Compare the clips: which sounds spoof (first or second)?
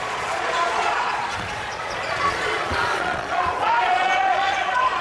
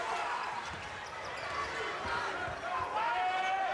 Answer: first